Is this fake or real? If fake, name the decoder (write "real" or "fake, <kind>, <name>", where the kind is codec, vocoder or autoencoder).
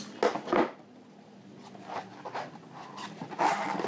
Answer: real